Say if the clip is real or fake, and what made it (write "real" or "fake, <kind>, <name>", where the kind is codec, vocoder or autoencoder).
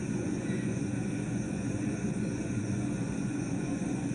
fake, vocoder, Vocos